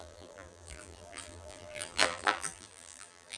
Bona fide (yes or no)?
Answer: no